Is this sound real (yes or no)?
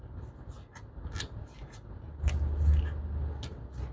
yes